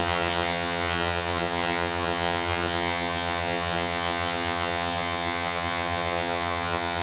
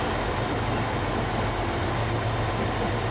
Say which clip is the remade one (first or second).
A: first